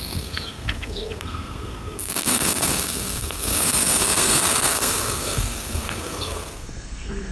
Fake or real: fake